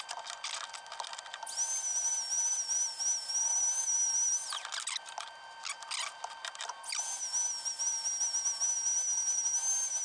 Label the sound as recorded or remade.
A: recorded